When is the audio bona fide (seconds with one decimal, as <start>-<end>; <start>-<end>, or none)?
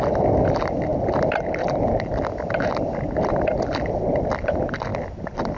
0.0-5.6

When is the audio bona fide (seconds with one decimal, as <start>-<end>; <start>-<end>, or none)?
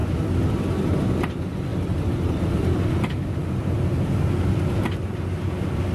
0.0-5.9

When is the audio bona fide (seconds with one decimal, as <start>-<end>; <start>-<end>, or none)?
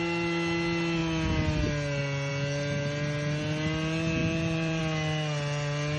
0.0-4.2; 4.8-6.0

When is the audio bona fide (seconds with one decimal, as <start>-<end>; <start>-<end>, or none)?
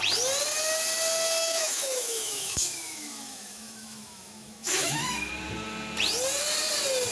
0.0-1.4; 5.3-7.1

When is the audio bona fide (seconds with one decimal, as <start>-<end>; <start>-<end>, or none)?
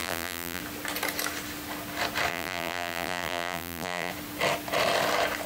0.6-2.3; 4.1-5.5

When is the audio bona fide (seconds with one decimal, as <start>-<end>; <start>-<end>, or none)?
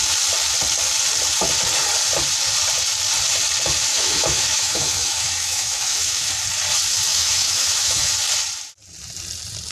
0.0-3.9; 6.3-7.1; 8.1-9.7